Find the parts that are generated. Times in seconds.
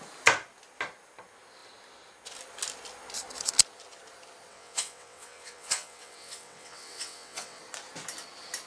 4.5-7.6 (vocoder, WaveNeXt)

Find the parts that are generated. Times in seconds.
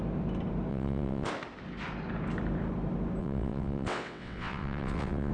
0.7-1.3 (vocoder, WaveNeXt); 3.2-5.3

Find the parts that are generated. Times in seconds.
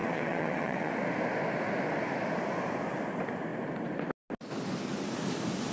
0.0-0.9 (vocoder, WaveNeXt)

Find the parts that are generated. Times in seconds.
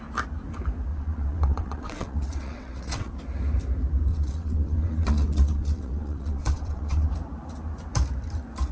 0.9-3.1 (vocoder, WaveNeXt); 4.1-7.1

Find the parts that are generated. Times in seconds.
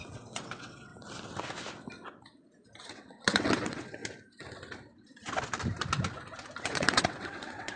0.0-0.9 (vocoder, WaveNeXt); 2.9-4.0; 6.6-7.8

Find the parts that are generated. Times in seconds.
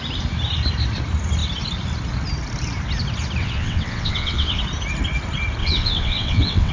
3.4-4.6 (vocoder, WaveNeXt); 5.6-6.7